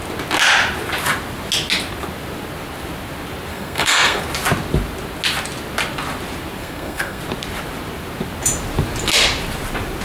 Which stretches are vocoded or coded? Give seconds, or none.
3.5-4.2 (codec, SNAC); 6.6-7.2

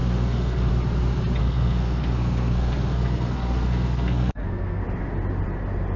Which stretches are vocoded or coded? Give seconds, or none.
0.0-0.7 (codec, SNAC); 1.4-4.8

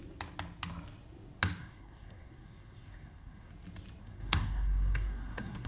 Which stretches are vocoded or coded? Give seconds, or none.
1.6-3.5 (codec, SNAC); 4.0-5.7

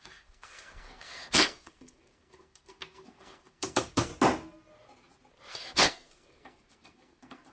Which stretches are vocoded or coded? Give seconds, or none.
0.0-4.1 (codec, SNAC); 5.5-7.5

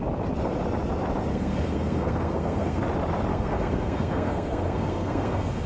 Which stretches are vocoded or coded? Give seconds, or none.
1.3-2.8 (codec, SNAC); 3.3-5.7